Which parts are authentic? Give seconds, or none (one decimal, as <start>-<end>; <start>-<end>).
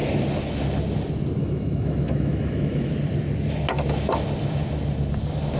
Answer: 0.0-1.4; 2.9-5.6